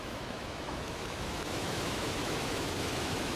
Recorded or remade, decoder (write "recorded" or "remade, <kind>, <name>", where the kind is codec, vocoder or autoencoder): remade, autoencoder, DAC-VAE